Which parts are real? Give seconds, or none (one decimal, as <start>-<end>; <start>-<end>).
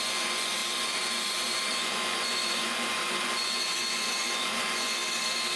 5.0-5.6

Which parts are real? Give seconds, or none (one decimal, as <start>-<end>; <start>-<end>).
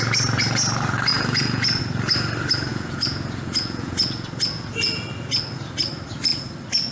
0.0-1.1; 1.8-2.7; 5.1-6.9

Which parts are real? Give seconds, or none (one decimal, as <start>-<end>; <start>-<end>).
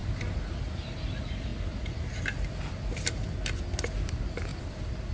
0.0-5.1